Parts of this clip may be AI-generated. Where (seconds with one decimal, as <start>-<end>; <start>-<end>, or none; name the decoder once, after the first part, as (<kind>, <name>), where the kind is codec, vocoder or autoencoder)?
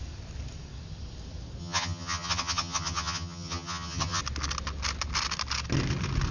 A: 1.6-4.2 (vocoder, HiFi-GAN)